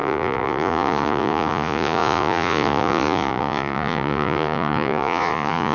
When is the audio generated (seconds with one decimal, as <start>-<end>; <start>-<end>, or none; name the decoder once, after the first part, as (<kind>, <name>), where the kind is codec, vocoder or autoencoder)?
0.0-5.7 (vocoder, Vocos)